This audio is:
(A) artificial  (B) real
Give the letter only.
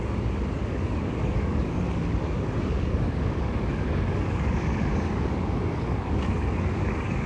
A